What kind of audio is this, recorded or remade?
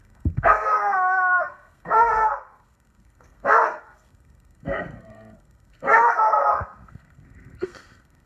remade